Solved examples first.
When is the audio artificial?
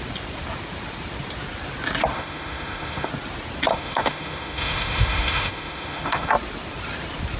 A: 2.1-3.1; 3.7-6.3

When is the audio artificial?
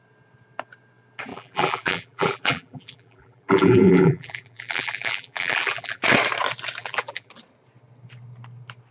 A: 1.3-6.0; 6.8-7.3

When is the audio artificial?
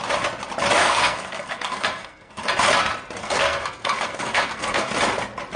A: 0.8-2.5; 3.2-4.9